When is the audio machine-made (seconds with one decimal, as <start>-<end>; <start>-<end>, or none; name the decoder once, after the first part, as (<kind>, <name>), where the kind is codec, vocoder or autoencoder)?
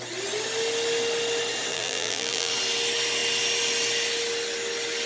1.7-2.5 (vocoder, BigVGAN v2)